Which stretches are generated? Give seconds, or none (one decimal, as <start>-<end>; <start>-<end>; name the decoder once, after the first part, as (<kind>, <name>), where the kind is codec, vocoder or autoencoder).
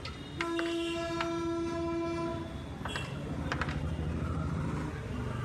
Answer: none